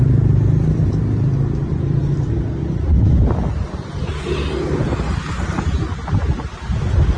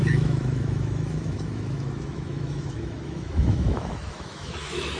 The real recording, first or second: first